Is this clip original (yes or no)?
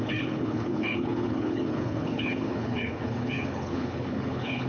no